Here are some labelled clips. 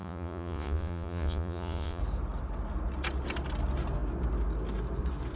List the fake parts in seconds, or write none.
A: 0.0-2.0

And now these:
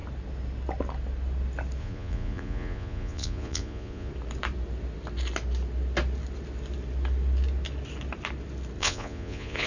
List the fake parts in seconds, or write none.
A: 1.8-4.1; 8.8-9.7

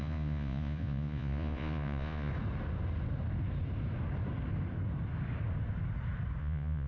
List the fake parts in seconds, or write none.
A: 0.0-2.3; 6.4-6.9

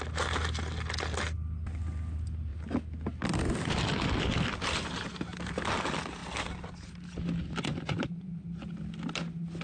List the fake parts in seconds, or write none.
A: none